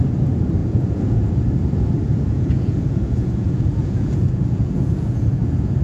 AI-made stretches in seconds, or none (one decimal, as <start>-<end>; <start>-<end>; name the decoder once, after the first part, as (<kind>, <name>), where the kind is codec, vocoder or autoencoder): 0.6-1.3 (vocoder, Vocos); 2.1-5.8